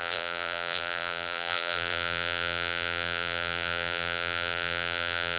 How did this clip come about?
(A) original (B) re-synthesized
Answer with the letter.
B